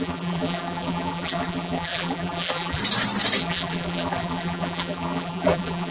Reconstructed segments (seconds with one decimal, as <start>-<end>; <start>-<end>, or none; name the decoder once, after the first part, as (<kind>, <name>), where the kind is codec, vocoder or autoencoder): 0.0-2.8 (vocoder, BigVGAN v2); 3.4-5.9